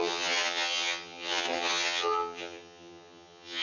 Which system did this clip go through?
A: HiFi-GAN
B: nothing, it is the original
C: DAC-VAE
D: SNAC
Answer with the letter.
A